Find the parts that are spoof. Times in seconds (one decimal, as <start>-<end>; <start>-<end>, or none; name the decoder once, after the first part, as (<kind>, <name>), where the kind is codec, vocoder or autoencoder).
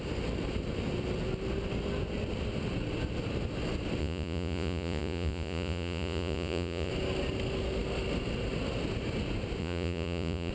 4.0-6.9 (vocoder, Vocos); 9.6-10.5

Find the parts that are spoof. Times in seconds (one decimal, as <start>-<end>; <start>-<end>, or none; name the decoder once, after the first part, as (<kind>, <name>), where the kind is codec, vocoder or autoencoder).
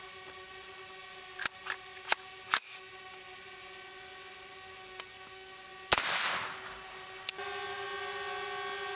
none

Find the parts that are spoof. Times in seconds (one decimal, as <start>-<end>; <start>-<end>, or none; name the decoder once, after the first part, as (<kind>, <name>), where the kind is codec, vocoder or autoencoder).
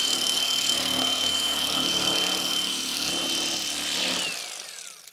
0.0-3.1 (codec, SNAC)